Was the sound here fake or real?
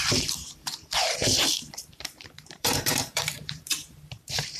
fake